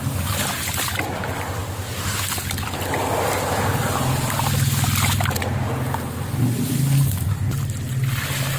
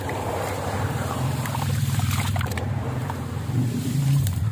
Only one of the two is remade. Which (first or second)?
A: second